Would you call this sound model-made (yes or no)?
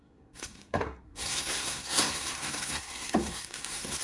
yes